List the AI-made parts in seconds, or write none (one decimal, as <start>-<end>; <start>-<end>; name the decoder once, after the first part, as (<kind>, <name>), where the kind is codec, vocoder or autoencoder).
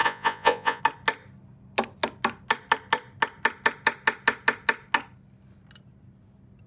0.0-0.8 (vocoder, Vocos)